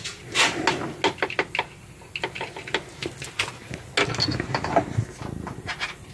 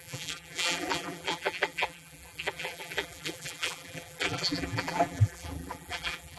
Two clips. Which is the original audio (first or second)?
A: first